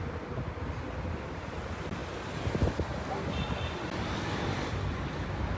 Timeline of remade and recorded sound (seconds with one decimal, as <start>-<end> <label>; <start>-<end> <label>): 0.0-5.6 recorded